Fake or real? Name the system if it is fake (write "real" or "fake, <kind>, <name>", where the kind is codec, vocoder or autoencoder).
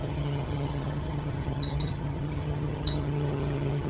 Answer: fake, vocoder, HiFi-GAN